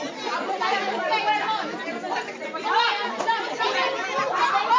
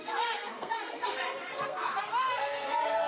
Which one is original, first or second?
first